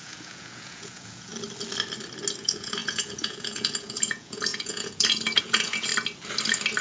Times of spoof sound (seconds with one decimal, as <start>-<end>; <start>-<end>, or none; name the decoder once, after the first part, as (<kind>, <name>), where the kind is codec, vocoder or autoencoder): 0.0-1.3 (vocoder, Vocos); 2.4-5.9